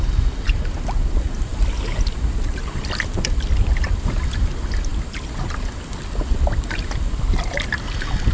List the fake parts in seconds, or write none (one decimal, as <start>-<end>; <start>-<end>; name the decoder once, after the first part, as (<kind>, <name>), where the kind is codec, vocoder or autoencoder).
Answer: none